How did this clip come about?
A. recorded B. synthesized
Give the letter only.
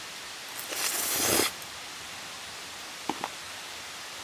A